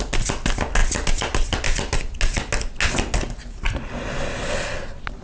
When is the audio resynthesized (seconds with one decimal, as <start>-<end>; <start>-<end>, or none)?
none